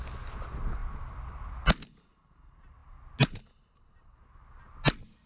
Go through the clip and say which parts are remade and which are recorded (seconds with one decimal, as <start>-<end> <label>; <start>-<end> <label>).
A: 0.0-5.3 recorded